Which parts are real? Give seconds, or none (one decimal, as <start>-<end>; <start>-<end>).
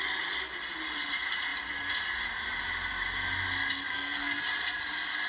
0.0-3.9; 4.4-5.3